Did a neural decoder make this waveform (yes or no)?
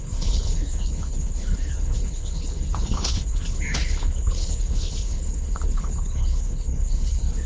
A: yes